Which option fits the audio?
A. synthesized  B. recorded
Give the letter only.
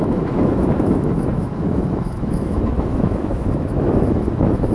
A